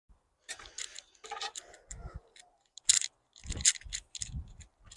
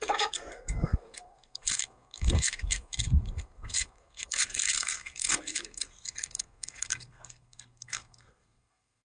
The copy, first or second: second